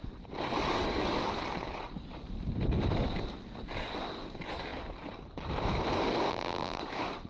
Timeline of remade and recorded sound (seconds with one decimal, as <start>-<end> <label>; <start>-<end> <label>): 0.0-6.3 recorded; 6.3-6.8 remade; 6.8-7.3 recorded